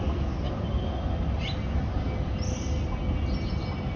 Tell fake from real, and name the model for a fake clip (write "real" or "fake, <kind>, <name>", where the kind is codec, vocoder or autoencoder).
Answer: real